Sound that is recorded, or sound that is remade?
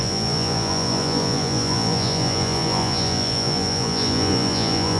remade